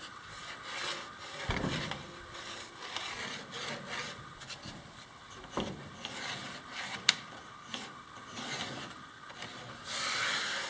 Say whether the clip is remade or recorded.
recorded